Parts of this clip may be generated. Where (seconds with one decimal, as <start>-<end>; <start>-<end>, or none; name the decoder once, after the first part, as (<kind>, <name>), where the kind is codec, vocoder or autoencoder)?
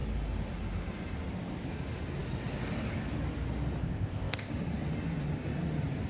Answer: 3.8-4.5 (codec, ZipCodec)